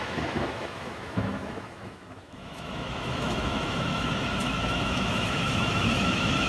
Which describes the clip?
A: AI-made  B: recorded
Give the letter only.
A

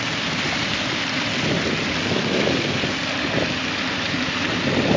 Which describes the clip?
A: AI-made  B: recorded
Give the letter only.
B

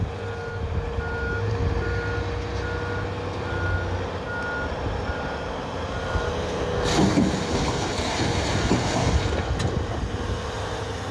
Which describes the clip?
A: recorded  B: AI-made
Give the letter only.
A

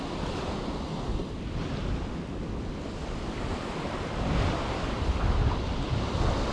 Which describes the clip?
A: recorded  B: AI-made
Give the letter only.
A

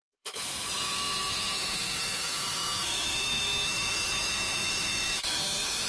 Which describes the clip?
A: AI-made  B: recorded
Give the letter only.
A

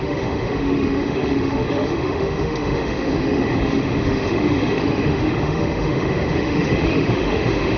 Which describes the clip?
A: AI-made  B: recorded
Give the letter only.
A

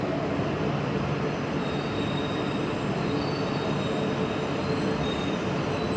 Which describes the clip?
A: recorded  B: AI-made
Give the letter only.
A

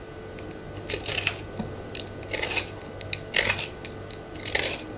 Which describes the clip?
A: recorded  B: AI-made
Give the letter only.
A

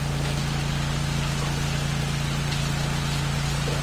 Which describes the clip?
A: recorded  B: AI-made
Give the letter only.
A